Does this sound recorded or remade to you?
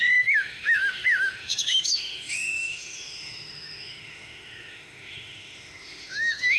remade